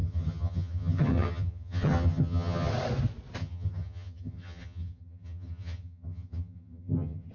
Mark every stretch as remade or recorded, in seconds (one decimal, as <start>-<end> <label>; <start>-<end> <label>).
0.0-2.7 remade; 2.7-3.4 recorded; 3.4-7.3 remade